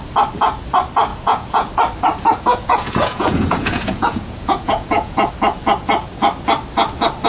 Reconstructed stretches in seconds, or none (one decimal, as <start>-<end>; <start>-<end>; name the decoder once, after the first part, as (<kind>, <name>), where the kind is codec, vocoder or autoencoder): 1.1-1.7 (vocoder, Vocos); 2.5-5.3